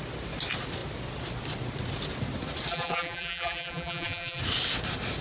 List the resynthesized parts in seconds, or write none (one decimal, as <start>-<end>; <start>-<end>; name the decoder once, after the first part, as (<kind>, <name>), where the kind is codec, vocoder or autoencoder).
2.7-4.4 (vocoder, BigVGAN v2)

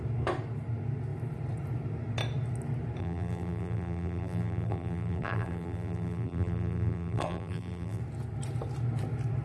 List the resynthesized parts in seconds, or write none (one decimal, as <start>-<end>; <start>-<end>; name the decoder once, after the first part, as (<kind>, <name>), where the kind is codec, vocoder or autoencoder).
3.0-8.0 (vocoder, BigVGAN v2)

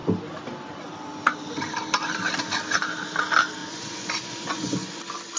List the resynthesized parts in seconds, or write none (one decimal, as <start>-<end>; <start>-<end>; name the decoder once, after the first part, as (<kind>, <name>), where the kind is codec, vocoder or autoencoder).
3.6-5.0 (vocoder, Vocos)

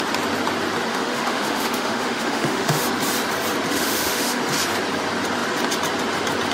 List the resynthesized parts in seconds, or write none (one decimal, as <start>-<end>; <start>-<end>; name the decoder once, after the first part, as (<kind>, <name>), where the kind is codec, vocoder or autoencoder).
0.9-2.9 (autoencoder, DAC-VAE); 3.7-4.4